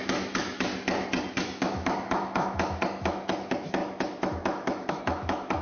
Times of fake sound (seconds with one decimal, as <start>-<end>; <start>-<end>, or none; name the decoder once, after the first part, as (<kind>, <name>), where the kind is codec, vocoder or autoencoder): 0.0-0.7 (autoencoder, DAC-VAE); 1.3-5.6